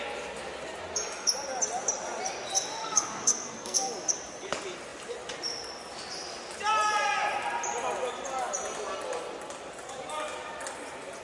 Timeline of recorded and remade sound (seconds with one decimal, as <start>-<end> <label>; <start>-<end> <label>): 0.0-2.8 recorded; 2.8-3.9 remade; 3.9-11.2 recorded